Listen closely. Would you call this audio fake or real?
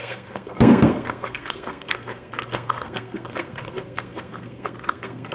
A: fake